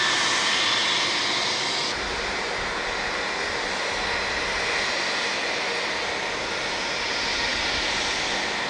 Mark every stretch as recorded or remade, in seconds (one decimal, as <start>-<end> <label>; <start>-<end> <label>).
0.0-8.7 recorded